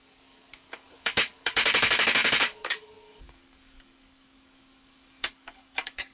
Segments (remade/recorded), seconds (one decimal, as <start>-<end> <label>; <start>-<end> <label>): 0.0-6.1 remade